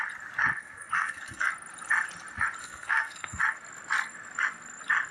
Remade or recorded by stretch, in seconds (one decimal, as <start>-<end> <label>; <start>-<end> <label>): 0.0-0.6 recorded; 0.6-1.5 remade; 1.5-2.6 recorded; 2.6-3.4 remade; 3.4-5.1 recorded